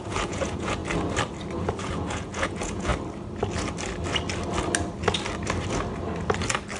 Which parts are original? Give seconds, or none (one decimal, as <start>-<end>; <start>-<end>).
0.8-1.8; 2.9-6.8